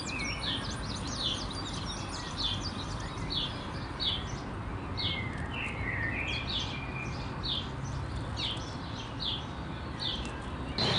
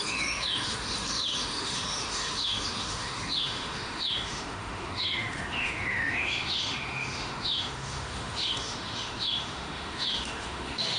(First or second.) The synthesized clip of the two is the second